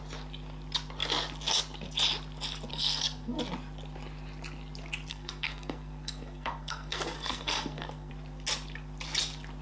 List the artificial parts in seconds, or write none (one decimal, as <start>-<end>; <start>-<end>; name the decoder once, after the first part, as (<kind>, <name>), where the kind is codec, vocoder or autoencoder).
2.7-3.4 (codec, SNAC); 5.1-8.1